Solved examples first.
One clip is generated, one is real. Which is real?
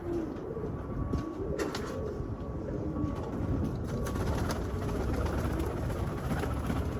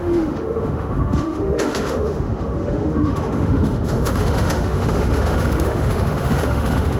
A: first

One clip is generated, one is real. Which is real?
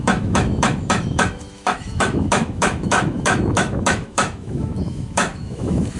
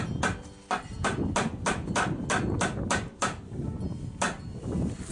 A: second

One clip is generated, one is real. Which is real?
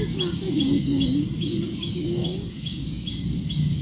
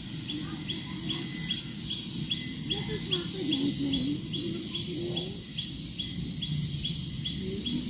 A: second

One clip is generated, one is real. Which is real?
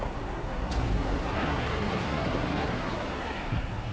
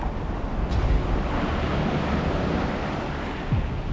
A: second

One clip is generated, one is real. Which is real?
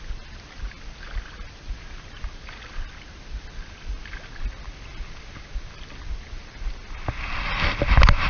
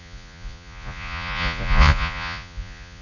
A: first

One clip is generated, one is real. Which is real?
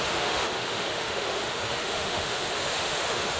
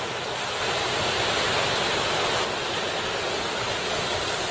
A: second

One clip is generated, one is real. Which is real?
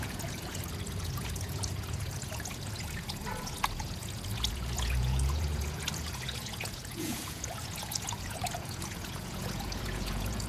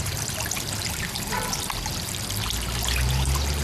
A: second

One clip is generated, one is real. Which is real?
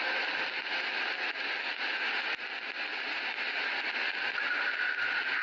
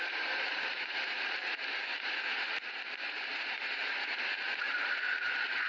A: first